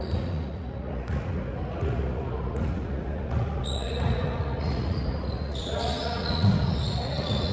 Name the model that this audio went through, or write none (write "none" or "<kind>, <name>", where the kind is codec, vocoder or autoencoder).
vocoder, Vocos